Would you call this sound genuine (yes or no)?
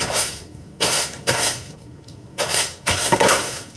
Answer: no